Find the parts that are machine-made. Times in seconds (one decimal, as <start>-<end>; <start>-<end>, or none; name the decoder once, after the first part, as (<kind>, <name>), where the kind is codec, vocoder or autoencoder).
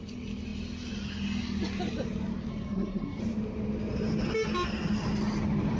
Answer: 2.5-3.2 (codec, SNAC)